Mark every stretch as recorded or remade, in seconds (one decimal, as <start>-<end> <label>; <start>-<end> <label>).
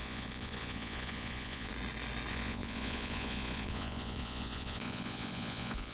0.0-1.7 remade; 1.7-2.3 recorded; 2.3-5.9 remade